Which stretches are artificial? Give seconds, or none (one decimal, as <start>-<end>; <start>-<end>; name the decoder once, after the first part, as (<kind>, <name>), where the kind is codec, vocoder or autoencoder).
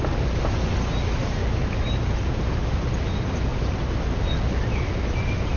none